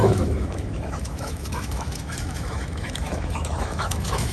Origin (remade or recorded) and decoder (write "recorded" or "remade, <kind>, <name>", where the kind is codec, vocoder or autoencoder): remade, autoencoder, DAC-VAE